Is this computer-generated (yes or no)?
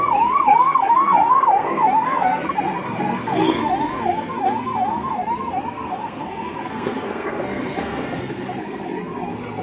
yes